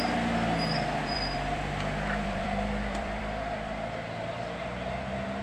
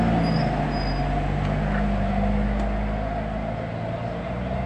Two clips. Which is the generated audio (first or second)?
first